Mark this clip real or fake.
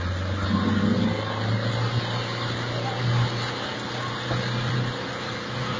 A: real